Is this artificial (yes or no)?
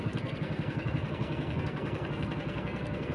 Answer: yes